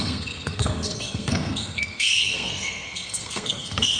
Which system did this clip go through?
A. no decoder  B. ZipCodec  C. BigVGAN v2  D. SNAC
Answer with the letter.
D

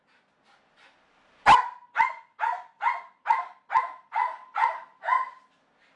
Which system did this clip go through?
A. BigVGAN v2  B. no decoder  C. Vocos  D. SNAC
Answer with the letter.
B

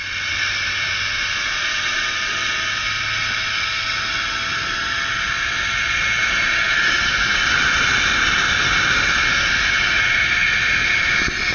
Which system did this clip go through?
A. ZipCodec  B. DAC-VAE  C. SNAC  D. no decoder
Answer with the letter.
D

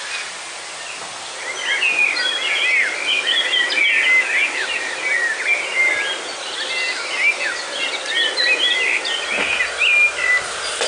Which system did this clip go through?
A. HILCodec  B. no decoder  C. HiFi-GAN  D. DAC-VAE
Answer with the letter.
B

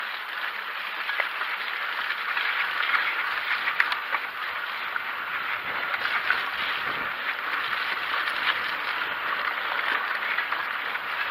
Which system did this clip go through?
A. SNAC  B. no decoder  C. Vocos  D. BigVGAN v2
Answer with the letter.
B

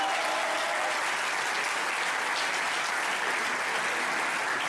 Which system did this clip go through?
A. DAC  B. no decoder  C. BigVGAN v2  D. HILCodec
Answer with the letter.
B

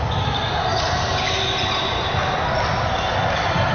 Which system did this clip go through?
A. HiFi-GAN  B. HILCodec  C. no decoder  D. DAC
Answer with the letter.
C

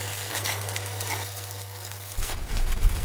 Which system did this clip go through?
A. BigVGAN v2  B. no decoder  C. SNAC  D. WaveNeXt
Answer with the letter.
C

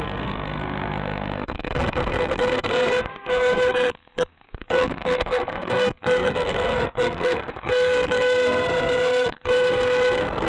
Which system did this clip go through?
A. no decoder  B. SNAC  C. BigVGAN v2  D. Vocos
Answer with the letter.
B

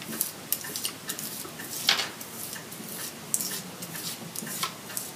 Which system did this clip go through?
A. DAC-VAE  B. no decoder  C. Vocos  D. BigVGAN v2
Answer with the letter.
B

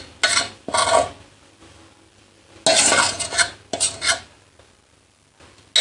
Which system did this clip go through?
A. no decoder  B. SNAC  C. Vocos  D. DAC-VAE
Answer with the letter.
A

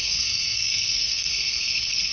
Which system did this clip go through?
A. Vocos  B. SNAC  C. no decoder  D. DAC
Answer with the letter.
B